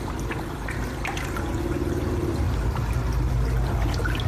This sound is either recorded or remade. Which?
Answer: recorded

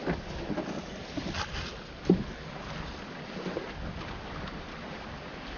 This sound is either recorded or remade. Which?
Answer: recorded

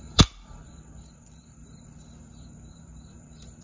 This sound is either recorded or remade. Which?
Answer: remade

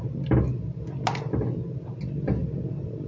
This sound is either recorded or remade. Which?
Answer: recorded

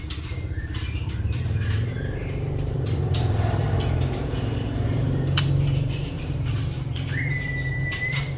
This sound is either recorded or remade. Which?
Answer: remade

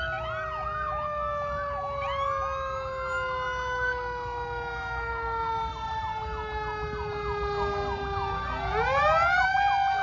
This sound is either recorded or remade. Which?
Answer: recorded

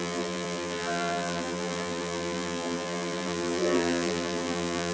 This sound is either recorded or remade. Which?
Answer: remade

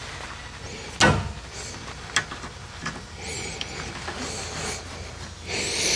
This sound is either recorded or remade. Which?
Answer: recorded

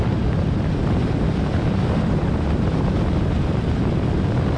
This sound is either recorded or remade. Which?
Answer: remade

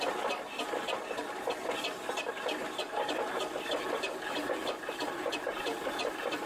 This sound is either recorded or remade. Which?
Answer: remade